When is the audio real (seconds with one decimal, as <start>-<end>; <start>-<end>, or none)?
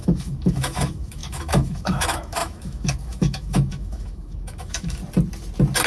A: 5.0-5.9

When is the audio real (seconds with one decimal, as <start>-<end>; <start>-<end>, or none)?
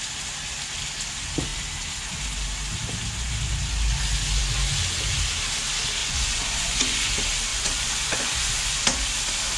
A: 0.0-6.0; 7.1-7.5; 8.8-9.6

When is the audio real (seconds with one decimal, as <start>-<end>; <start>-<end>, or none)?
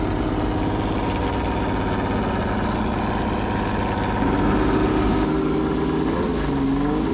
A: 0.0-4.9; 5.6-7.1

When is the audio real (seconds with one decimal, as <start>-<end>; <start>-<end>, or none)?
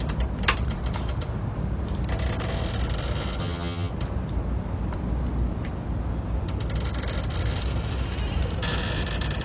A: 0.0-3.4; 3.9-9.4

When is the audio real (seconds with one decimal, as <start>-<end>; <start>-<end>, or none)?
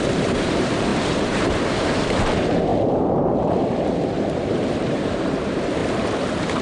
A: 2.7-4.5; 5.8-6.6